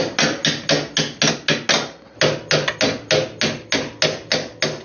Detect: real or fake real